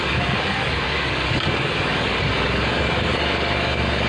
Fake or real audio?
fake